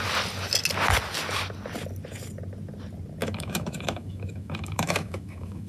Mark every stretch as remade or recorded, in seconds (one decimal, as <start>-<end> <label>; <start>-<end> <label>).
0.0-3.2 recorded; 3.2-5.7 remade